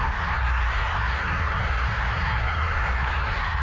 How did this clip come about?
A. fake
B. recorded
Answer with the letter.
A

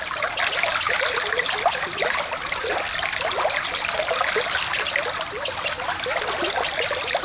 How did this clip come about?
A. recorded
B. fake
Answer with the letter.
A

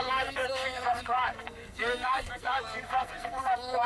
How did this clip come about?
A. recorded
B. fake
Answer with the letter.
B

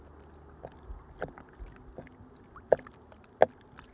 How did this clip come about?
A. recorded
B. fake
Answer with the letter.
A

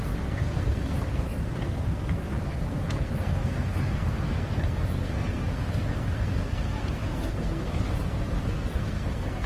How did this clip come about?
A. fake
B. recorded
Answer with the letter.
A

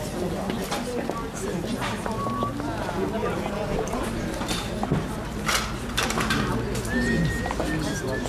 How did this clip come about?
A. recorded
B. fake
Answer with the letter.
A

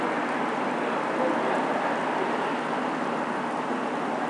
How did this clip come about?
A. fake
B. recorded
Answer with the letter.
B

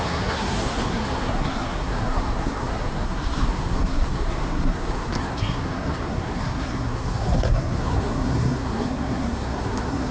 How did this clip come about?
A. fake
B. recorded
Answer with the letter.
A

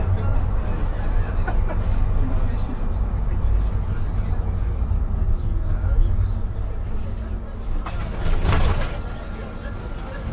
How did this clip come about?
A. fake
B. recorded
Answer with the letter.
B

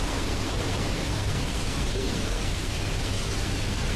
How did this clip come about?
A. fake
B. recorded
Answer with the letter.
A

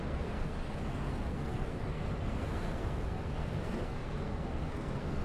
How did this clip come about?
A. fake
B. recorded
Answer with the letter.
A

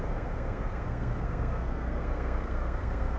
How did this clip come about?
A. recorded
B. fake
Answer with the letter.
B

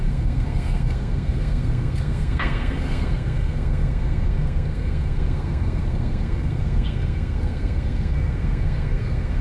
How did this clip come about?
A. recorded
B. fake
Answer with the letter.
B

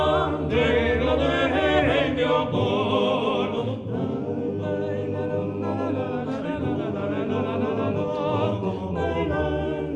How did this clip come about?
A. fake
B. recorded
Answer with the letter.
B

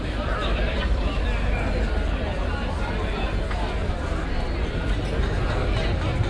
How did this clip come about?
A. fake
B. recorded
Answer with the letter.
B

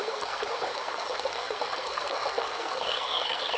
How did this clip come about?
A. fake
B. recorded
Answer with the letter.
A